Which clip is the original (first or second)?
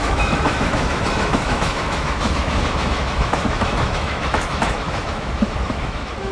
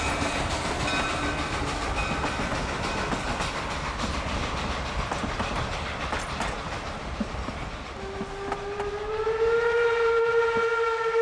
second